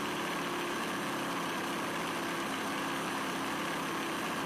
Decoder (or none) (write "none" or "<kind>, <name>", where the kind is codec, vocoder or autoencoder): none